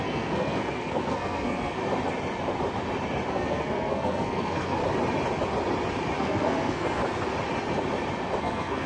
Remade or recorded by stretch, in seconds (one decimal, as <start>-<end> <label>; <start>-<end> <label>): 0.0-1.8 remade; 1.8-3.3 recorded; 3.3-4.8 remade; 4.8-6.2 recorded; 6.2-7.0 remade; 7.0-8.4 recorded; 8.4-8.9 remade